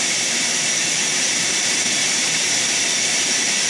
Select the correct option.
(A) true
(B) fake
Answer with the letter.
B